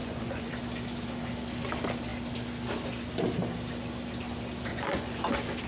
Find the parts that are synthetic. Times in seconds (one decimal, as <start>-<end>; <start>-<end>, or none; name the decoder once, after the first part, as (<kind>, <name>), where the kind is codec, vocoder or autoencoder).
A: 0.0-0.5 (vocoder, Vocos); 4.7-5.2